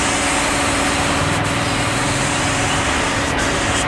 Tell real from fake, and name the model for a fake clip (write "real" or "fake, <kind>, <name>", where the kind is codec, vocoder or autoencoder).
real